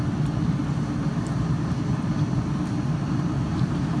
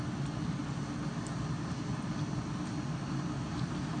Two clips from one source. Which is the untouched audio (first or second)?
second